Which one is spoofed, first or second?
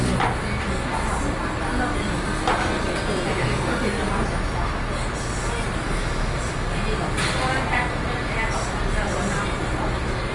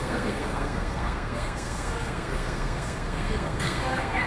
second